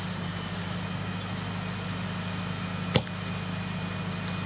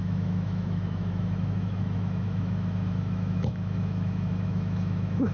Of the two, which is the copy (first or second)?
second